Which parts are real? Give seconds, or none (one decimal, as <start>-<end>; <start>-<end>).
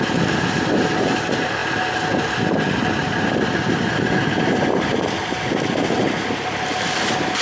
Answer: 0.0-7.4